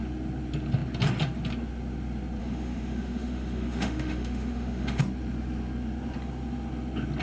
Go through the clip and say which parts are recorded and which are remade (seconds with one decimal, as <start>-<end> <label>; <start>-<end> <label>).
0.0-2.4 recorded; 2.4-5.0 remade; 5.0-7.2 recorded